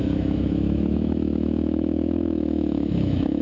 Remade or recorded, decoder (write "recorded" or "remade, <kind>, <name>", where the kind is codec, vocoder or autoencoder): remade, autoencoder, DAC-VAE